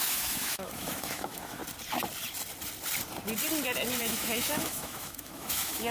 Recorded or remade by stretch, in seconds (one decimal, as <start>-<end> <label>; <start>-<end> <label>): 0.0-1.6 remade; 1.6-4.0 recorded; 4.0-5.9 remade